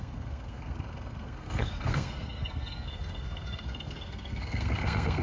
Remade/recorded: remade